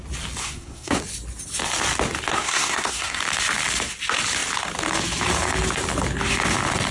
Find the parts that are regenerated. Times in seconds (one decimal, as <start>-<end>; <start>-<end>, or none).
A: 0.4-1.0; 2.3-3.2